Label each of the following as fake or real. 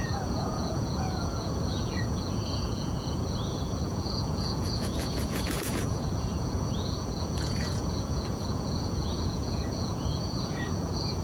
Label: fake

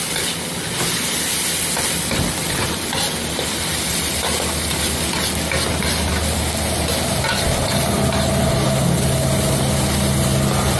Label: real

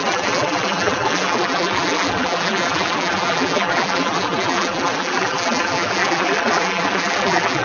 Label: fake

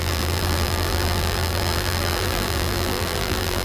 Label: fake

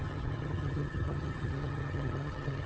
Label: fake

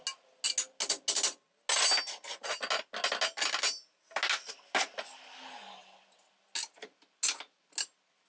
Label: real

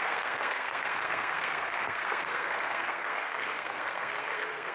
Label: fake